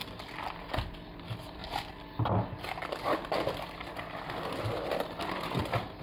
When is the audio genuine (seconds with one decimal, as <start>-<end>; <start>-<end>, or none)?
0.0-6.0